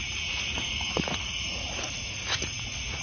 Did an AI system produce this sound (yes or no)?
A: yes